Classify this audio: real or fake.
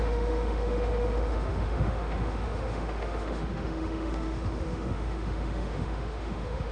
fake